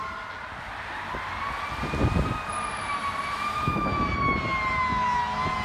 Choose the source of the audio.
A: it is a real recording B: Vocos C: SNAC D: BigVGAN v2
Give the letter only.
A